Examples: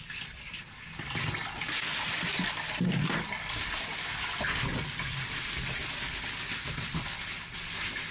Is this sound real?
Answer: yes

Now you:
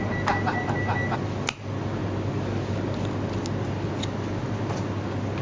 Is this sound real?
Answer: yes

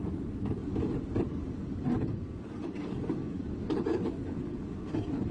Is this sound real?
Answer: no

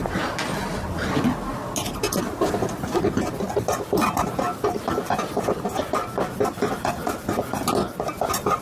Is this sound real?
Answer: yes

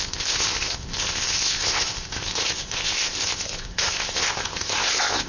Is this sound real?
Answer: no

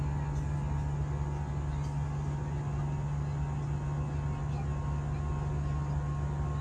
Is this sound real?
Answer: yes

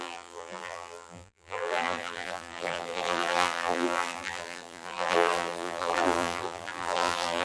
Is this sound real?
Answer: no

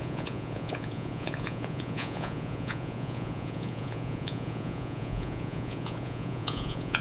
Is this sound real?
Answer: no